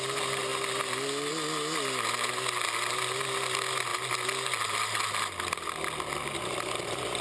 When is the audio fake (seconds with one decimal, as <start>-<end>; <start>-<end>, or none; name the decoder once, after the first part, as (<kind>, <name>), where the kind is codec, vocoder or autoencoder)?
none